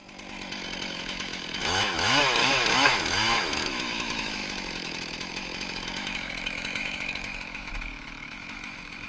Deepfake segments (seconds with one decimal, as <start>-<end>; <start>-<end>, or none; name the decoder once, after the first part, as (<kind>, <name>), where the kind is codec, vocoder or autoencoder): 0.9-9.1 (autoencoder, DAC-VAE)